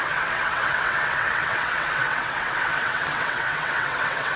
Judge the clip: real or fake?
fake